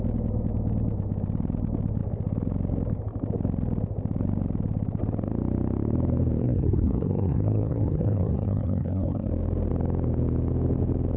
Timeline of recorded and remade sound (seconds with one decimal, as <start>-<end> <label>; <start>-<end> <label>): 0.0-6.4 recorded; 6.4-9.3 remade; 9.3-11.2 recorded